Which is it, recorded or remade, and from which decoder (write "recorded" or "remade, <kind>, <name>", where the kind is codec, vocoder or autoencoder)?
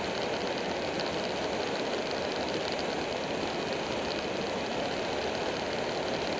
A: recorded